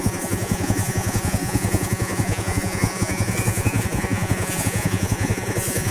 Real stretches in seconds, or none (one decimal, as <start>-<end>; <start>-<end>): none